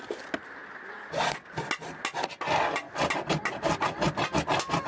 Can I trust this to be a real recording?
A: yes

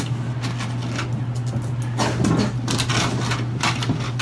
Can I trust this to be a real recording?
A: yes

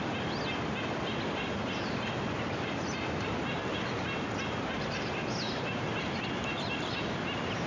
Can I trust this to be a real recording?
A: yes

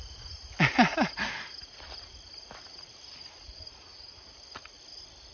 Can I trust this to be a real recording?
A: yes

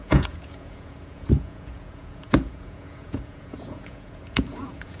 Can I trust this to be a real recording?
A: no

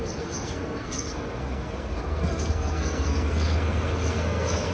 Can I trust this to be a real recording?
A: no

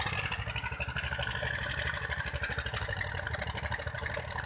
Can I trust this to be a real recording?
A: yes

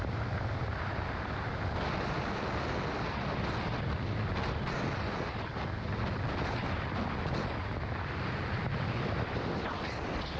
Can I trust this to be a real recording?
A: yes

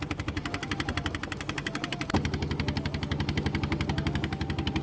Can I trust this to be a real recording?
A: yes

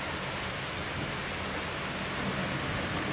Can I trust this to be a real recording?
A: yes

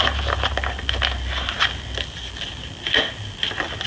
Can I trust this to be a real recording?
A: yes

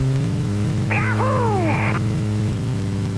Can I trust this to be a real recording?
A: no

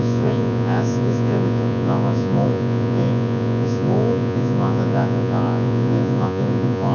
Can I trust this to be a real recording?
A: no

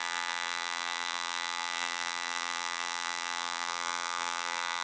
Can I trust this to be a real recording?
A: no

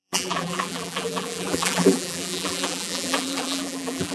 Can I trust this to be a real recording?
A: no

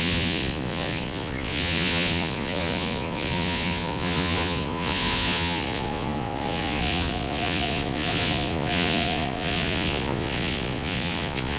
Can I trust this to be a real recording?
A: no